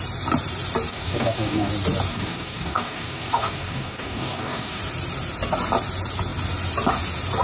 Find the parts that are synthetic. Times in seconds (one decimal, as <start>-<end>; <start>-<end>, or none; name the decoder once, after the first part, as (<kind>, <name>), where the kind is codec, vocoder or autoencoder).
0.9-1.7 (codec, DAC); 2.1-4.8